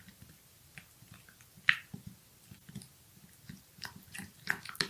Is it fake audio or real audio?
real